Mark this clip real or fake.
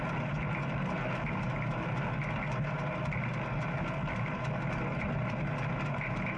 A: real